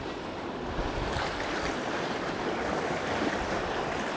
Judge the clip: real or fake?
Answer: real